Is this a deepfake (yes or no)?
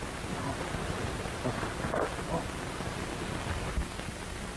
no